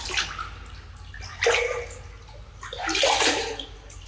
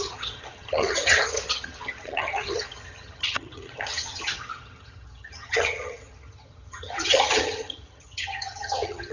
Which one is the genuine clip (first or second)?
first